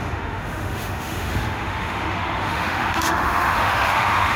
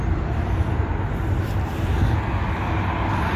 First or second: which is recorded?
second